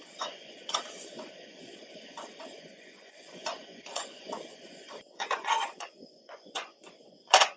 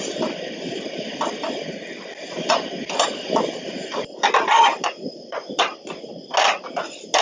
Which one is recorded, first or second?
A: second